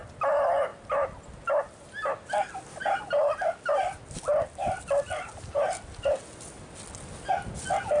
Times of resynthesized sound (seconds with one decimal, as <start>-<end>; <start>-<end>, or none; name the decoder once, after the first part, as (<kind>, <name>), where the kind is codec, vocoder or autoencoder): none